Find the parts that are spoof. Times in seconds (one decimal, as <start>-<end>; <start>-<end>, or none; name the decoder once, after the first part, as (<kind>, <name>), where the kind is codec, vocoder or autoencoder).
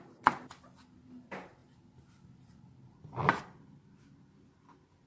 none